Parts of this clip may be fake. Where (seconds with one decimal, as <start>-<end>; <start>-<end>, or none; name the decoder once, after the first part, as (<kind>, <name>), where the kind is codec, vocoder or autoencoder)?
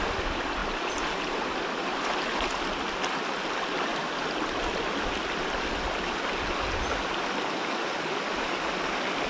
none